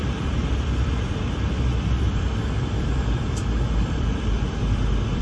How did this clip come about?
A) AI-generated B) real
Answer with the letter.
A